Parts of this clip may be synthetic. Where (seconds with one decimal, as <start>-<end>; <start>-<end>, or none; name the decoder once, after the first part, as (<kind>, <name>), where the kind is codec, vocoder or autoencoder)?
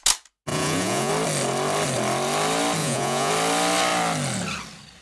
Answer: 0.5-1.1 (vocoder, Vocos); 2.8-3.3